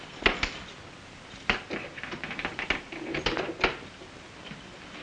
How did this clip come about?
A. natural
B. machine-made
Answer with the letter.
A